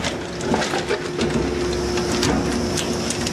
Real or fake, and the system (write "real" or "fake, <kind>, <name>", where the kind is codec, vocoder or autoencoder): real